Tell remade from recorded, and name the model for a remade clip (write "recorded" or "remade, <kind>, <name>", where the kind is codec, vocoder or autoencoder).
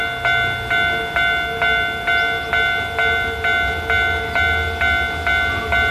recorded